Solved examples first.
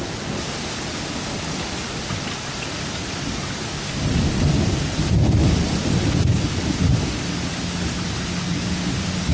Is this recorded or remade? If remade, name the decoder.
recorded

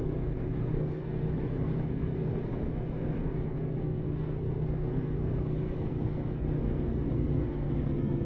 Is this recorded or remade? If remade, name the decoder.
remade, codec, SNAC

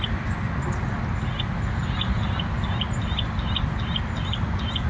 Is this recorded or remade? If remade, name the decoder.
recorded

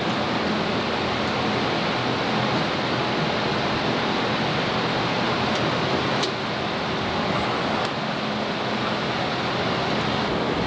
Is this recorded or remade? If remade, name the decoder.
recorded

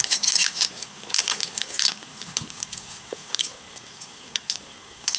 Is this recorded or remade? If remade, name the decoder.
remade, codec, SNAC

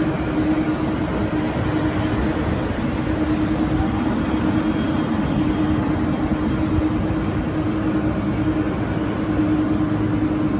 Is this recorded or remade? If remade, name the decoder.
recorded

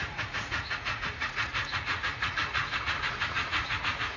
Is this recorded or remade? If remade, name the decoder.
remade, vocoder, Vocos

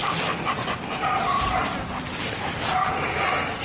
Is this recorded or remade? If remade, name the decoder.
recorded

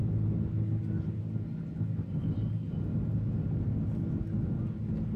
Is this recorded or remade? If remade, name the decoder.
recorded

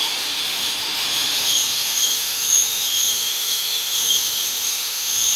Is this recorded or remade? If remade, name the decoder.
remade, autoencoder, DAC-VAE